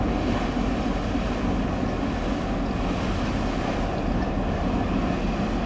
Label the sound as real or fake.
real